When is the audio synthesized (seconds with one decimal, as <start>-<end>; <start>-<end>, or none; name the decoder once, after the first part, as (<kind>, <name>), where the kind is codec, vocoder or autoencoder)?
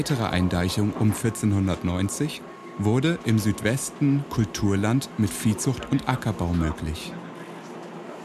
none